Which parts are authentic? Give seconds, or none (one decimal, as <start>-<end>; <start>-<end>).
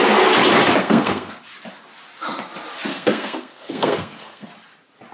0.0-0.8; 1.4-2.9; 4.5-5.1